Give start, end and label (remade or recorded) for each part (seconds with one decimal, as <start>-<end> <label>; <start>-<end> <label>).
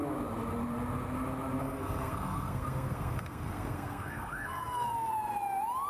0.0-1.6 recorded; 1.6-5.1 remade; 5.1-5.9 recorded